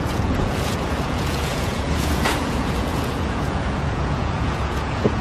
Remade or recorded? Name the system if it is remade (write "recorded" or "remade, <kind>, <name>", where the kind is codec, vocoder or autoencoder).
remade, vocoder, Vocos